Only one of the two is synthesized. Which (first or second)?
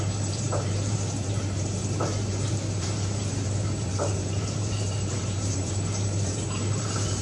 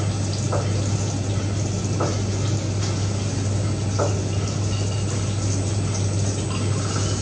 first